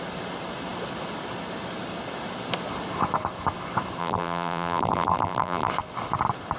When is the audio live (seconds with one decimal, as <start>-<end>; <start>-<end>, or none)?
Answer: 0.0-4.0; 5.7-6.6